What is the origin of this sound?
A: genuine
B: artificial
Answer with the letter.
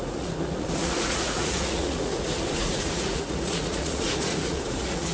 B